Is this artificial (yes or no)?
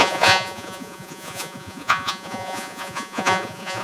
yes